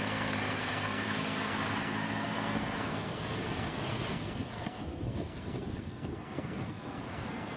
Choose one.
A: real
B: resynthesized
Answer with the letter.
B